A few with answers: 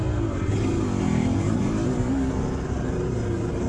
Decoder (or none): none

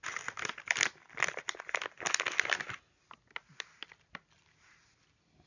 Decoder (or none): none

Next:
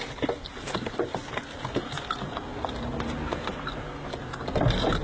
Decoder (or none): none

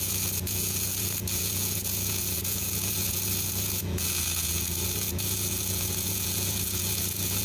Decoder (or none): vocoder, Vocos